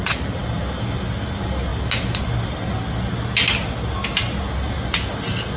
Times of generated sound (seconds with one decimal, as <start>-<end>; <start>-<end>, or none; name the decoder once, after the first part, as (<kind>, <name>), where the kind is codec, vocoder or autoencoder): none